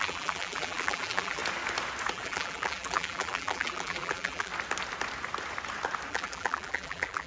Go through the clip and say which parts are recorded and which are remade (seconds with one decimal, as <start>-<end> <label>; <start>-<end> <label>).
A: 0.0-1.4 remade; 1.4-2.1 recorded; 2.1-4.5 remade; 4.5-6.1 recorded; 6.1-7.3 remade